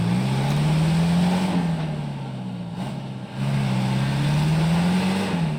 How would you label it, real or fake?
real